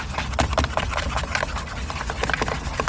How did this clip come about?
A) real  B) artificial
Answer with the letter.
A